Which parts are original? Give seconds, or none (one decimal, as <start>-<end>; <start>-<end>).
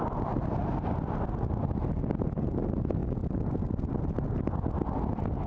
0.0-5.5